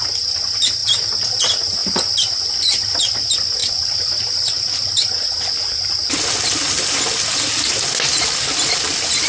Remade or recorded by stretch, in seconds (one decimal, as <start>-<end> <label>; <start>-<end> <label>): 0.0-0.8 recorded; 0.8-1.4 remade; 1.4-9.3 recorded